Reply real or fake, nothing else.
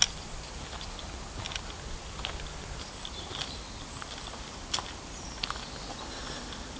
real